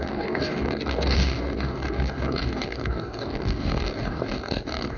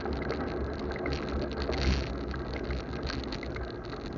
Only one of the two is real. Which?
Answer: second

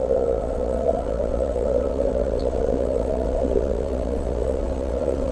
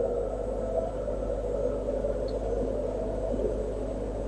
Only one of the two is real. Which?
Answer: second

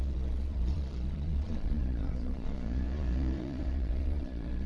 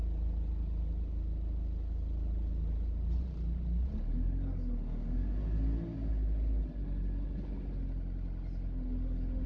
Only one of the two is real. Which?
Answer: second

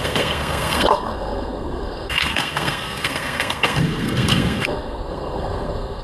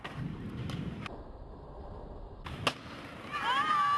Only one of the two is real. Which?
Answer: second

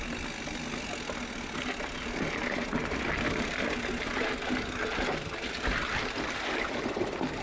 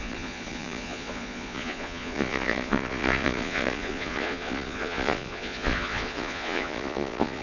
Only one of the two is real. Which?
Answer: first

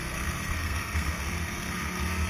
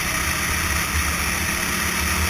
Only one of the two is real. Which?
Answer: second